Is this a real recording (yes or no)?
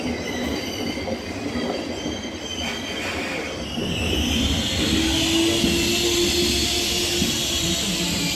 yes